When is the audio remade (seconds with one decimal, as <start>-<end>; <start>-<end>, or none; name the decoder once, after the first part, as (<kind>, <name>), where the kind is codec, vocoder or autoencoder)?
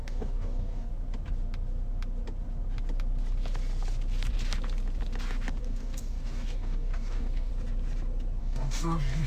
0.0-0.9 (codec, DAC); 5.6-7.5; 8.4-9.3